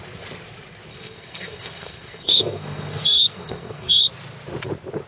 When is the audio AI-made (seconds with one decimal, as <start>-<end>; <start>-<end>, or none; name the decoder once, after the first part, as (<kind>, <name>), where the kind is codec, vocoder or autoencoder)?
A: 0.9-4.0 (codec, SNAC)